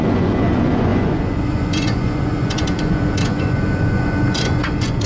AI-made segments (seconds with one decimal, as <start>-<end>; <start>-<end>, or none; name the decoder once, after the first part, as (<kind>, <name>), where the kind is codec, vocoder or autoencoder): 0.0-5.1 (vocoder, Vocos)